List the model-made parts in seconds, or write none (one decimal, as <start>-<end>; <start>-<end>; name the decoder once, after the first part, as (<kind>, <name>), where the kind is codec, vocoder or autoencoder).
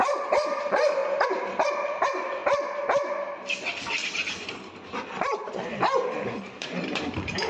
0.0-1.0 (vocoder, BigVGAN v2); 1.7-2.4; 5.4-7.5